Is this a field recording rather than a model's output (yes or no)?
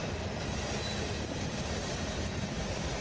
yes